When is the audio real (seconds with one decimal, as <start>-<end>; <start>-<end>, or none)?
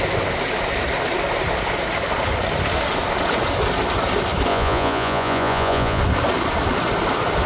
0.0-4.5; 6.0-7.5